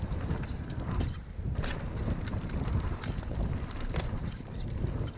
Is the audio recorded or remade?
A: recorded